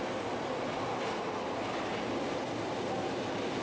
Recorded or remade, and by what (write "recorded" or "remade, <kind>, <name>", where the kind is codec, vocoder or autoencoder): recorded